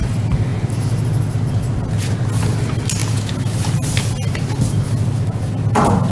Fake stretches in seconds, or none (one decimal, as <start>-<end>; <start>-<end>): none